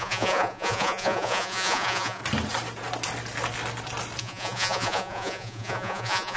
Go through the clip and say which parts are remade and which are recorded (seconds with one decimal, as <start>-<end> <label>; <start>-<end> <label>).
0.0-2.2 remade; 2.2-4.2 recorded; 4.2-6.4 remade